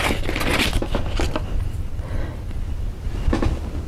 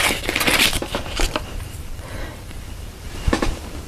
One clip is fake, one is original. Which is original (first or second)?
first